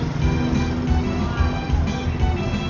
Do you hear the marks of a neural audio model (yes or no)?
no